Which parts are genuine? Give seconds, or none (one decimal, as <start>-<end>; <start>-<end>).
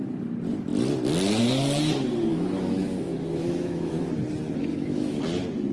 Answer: 0.0-2.3; 4.1-4.7; 5.2-5.7